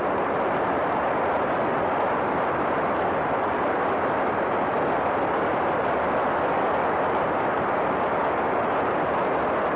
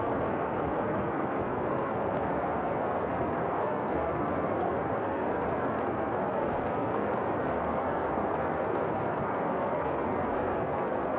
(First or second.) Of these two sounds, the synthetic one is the second